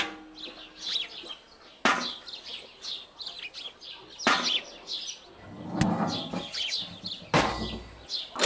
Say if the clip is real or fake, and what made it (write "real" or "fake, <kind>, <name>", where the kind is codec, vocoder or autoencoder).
real